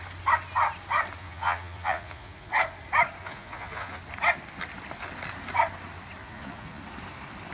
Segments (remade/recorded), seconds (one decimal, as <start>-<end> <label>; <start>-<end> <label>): 0.0-1.2 recorded; 1.2-2.5 remade; 2.5-3.2 recorded; 3.2-4.0 remade; 4.0-6.2 recorded; 6.2-6.8 remade; 6.8-7.5 recorded